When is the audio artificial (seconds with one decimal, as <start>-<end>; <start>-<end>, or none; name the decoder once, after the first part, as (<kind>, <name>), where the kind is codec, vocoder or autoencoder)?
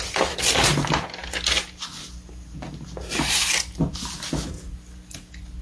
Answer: none